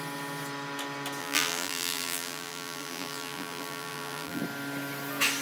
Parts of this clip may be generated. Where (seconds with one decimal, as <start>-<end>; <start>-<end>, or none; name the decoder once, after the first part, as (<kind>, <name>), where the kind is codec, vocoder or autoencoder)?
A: 1.2-4.4 (vocoder, BigVGAN v2)